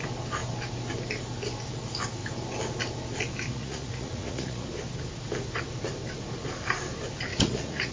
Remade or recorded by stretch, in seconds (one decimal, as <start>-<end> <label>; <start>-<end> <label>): 0.0-3.5 recorded; 3.5-4.7 remade; 4.7-7.3 recorded; 7.3-7.9 remade